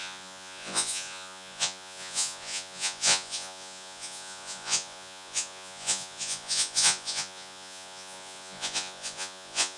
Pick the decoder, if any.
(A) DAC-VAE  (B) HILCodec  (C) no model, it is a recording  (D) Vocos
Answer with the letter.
D